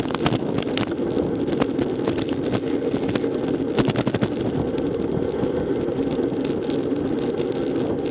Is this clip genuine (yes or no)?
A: yes